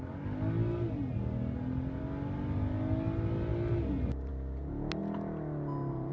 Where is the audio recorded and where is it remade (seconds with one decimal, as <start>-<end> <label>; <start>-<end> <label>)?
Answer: 0.0-6.1 recorded